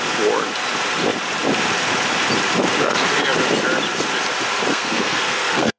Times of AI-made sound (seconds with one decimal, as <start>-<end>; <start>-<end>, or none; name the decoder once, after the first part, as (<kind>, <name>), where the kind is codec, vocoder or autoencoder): 4.7-5.8 (codec, SNAC)